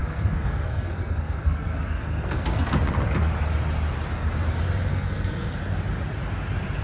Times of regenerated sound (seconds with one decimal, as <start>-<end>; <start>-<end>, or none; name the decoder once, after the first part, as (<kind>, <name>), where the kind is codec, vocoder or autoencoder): 0.0-2.7 (codec, SNAC); 4.9-5.6